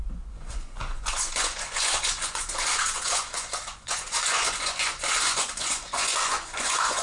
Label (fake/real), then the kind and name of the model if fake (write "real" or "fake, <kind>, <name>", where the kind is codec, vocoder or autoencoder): fake, vocoder, Vocos